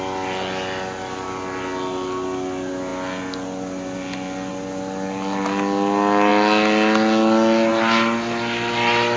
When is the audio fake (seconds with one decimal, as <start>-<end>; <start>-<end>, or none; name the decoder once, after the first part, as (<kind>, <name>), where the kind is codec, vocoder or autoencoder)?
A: none

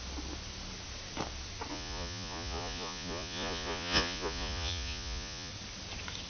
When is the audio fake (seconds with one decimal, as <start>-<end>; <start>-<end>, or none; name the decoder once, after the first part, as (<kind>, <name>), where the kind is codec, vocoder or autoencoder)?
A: 1.7-5.5 (vocoder, Vocos)

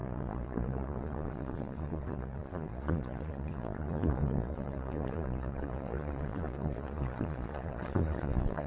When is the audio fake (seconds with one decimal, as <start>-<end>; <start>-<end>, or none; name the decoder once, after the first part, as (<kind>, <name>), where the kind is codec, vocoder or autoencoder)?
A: 0.0-8.7 (vocoder, Vocos)